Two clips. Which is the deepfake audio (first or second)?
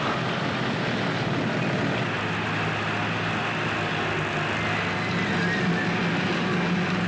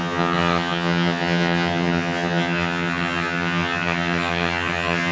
second